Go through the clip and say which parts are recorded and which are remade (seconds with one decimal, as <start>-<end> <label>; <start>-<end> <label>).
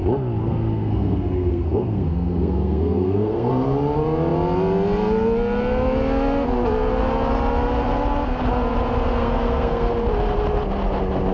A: 0.0-0.4 recorded; 0.4-3.5 remade; 3.5-9.2 recorded; 9.2-9.9 remade; 9.9-11.3 recorded